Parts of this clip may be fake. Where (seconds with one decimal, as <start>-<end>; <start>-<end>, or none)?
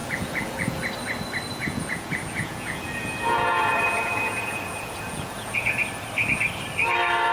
0.0-0.8; 1.5-5.8